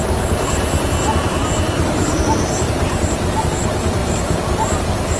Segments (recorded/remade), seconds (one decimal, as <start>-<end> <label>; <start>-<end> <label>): 0.0-1.4 recorded; 1.4-2.2 remade; 2.2-5.2 recorded